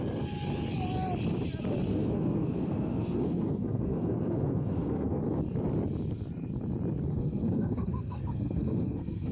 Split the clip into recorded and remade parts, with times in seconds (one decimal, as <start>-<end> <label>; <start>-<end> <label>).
0.0-1.9 recorded; 1.9-5.2 remade; 5.2-7.1 recorded; 7.1-9.3 remade